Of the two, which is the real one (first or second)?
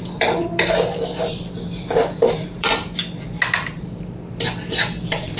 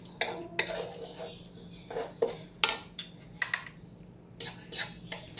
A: second